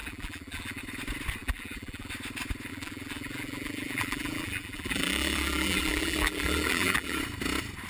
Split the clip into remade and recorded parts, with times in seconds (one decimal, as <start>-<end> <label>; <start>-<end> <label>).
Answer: 0.0-0.8 remade; 0.8-1.4 recorded; 1.4-2.1 remade; 2.1-2.7 recorded; 2.7-7.2 remade; 7.2-7.9 recorded